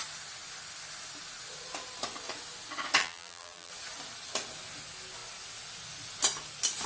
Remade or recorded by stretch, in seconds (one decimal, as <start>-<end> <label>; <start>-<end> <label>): 0.0-3.0 recorded; 3.0-3.7 remade; 3.7-6.9 recorded